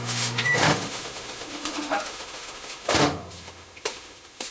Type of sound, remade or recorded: remade